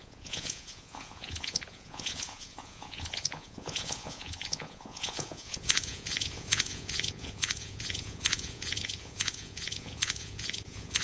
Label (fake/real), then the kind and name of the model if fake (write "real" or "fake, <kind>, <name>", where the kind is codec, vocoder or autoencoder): fake, vocoder, Vocos